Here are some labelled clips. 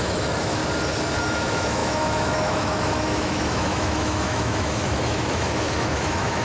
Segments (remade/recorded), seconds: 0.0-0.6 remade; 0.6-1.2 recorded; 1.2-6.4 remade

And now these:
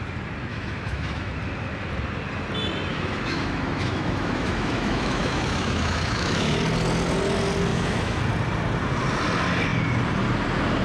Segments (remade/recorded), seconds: 0.0-0.5 recorded; 0.5-1.3 remade; 1.3-2.9 recorded; 2.9-6.6 remade; 6.6-7.7 recorded; 7.7-8.2 remade; 8.2-10.8 recorded